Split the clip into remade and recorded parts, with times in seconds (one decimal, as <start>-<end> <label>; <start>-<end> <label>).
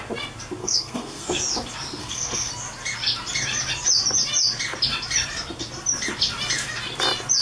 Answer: 0.0-0.6 recorded; 0.6-1.4 remade; 1.4-2.0 recorded; 2.0-2.5 remade; 2.5-7.4 recorded